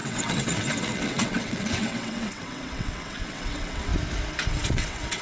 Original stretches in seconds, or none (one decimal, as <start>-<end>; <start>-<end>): 3.9-4.5

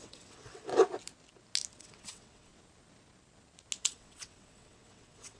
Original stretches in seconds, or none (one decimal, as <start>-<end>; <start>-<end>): 0.7-1.8; 2.5-3.8

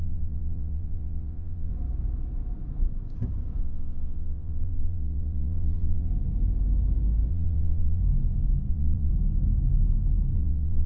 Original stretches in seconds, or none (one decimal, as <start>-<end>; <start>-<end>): 1.7-3.6; 6.1-7.3; 8.0-8.7; 9.1-10.4

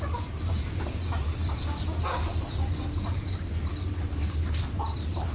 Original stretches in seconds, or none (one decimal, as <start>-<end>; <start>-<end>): 0.0-5.3

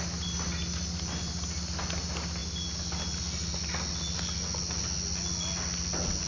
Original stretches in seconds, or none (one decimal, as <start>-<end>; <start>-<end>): 0.0-6.3